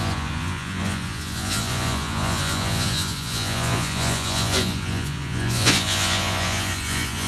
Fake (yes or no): yes